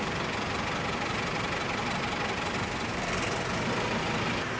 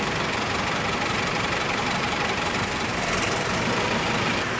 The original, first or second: first